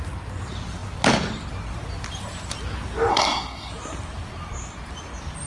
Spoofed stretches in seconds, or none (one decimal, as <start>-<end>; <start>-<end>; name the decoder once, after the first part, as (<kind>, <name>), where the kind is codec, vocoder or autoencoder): 3.1-3.7 (codec, SNAC)